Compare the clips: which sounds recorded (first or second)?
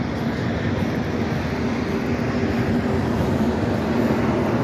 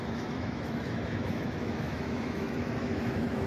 first